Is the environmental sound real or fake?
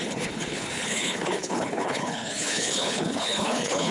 fake